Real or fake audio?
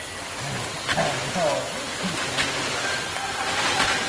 real